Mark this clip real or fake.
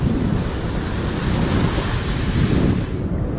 real